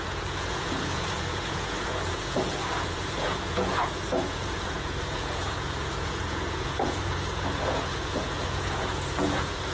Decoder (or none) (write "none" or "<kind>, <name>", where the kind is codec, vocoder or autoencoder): vocoder, Vocos